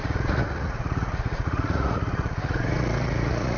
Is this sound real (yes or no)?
no